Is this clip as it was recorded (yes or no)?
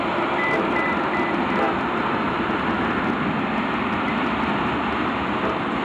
yes